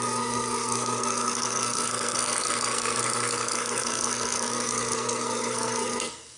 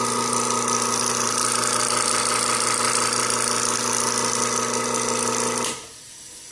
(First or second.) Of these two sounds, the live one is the second